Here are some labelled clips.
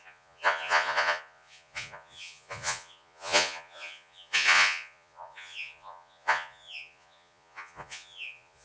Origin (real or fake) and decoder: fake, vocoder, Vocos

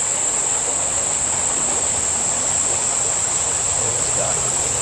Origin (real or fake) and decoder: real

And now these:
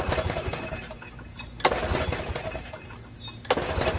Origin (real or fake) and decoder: real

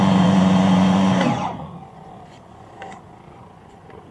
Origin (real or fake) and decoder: fake, vocoder, Vocos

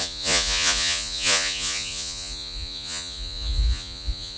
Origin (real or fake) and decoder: fake, vocoder, Vocos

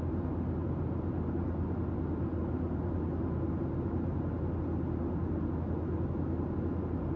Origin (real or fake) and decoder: real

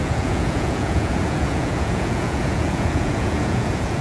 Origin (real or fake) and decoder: fake, vocoder, Vocos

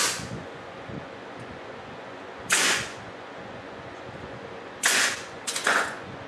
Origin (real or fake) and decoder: fake, vocoder, Vocos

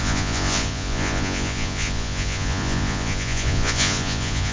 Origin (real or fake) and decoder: fake, vocoder, Vocos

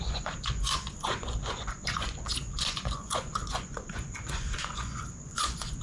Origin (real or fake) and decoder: fake, vocoder, Vocos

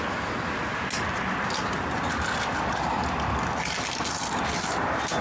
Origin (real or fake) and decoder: real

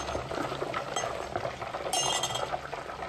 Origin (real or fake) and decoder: real